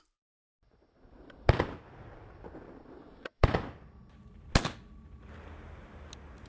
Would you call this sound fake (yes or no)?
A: no